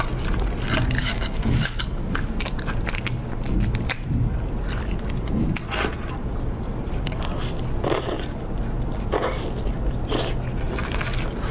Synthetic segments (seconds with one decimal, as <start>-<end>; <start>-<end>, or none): 1.0-2.0